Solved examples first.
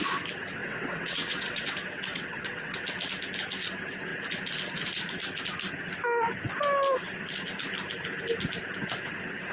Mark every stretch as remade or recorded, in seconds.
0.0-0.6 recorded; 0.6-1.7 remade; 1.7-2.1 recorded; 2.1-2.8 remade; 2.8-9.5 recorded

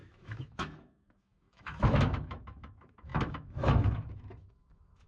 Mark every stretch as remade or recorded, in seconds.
0.0-5.1 remade

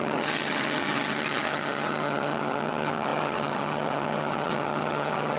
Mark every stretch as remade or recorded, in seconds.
0.0-5.4 remade

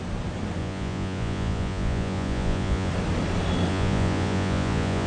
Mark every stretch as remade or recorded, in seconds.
0.0-0.6 recorded; 0.6-2.9 remade; 2.9-3.7 recorded; 3.7-5.1 remade